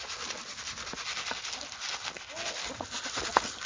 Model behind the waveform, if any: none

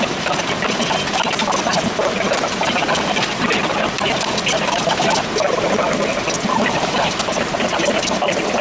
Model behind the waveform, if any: none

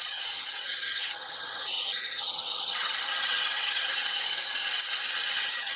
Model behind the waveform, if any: vocoder, HiFi-GAN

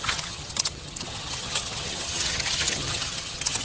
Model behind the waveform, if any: vocoder, HiFi-GAN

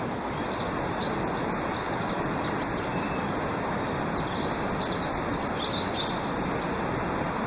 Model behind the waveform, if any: none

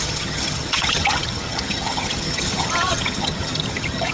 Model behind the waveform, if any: vocoder, HiFi-GAN